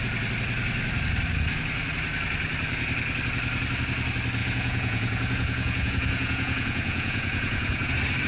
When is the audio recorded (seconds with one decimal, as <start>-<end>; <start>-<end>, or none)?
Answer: 0.0-4.4; 7.9-8.3